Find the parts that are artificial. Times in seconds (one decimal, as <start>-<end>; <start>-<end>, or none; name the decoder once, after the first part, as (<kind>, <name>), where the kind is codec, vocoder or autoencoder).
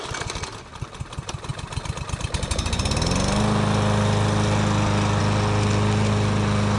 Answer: none